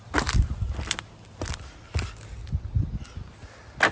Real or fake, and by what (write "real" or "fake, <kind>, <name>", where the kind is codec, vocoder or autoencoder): real